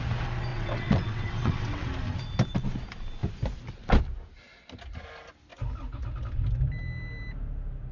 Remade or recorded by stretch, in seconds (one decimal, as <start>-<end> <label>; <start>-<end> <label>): 0.0-0.5 recorded; 0.5-1.9 remade; 1.9-7.9 recorded